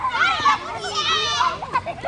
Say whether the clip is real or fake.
real